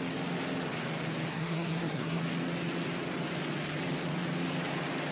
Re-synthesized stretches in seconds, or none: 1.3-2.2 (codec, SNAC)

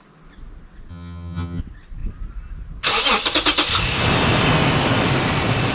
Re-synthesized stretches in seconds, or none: 0.9-1.6 (vocoder, HiFi-GAN)

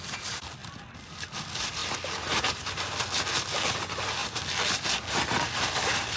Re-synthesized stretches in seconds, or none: none